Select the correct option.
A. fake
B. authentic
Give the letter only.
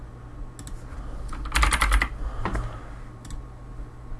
B